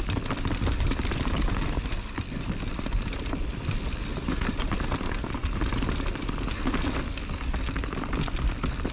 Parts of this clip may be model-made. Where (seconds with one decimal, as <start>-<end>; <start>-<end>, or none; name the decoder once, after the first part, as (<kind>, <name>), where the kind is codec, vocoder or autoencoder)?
none

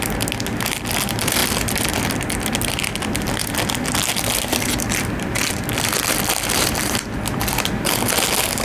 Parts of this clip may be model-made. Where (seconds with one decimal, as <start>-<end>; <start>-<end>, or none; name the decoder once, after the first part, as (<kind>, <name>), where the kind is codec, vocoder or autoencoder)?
none

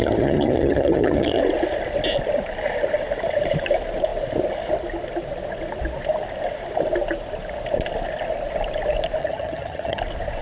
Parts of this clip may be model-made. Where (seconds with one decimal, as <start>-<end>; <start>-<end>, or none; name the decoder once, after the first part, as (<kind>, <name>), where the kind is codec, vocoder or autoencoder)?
0.0-1.4 (vocoder, HiFi-GAN); 9.2-10.0

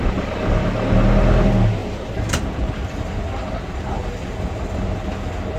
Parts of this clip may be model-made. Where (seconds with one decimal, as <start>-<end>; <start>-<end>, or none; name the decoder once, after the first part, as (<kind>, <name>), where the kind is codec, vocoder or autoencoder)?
1.8-4.8 (vocoder, BigVGAN v2)

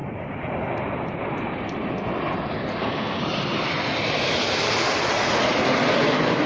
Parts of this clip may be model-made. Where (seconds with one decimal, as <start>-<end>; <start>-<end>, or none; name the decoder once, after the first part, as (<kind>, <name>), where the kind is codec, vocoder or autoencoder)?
2.7-3.2 (codec, SNAC)

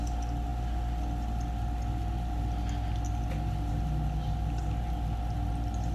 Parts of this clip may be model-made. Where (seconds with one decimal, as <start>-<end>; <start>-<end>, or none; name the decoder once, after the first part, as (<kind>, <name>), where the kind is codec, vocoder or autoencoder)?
none

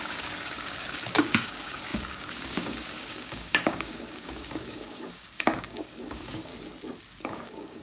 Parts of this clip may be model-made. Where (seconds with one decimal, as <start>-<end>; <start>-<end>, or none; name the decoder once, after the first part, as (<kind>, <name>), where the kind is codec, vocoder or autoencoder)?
0.0-6.5 (codec, DAC); 7.2-7.8